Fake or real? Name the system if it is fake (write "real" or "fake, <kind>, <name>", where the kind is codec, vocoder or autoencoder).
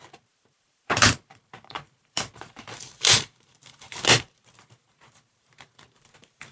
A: fake, vocoder, BigVGAN v2